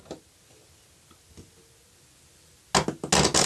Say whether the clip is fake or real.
real